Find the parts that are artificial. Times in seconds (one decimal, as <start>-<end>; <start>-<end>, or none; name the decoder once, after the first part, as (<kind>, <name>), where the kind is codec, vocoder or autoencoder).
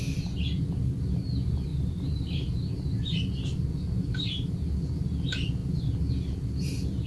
1.7-2.6 (vocoder, BigVGAN v2); 4.0-4.6